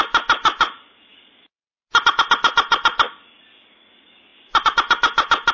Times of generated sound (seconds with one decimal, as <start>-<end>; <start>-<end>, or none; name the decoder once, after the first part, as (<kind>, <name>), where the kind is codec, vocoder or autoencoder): none